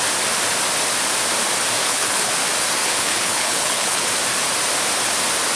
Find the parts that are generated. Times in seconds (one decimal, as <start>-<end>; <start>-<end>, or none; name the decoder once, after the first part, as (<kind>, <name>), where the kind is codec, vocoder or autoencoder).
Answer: 1.8-2.3 (codec, HILCodec); 2.8-4.1